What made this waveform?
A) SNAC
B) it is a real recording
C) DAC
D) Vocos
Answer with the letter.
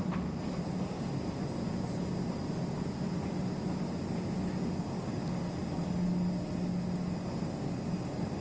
B